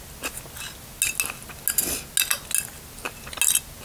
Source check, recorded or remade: recorded